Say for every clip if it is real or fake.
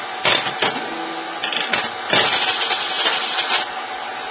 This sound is real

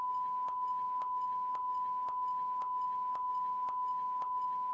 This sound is real